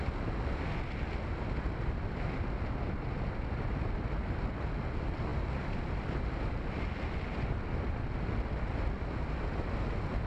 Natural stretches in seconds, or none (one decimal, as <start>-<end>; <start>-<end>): 0.0-10.3